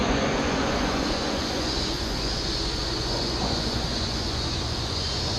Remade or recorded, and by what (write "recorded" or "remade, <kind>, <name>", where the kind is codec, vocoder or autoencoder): remade, vocoder, Vocos